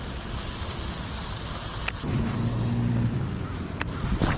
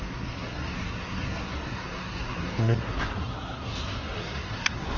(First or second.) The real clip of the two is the first